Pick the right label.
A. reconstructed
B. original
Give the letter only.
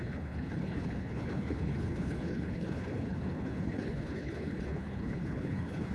A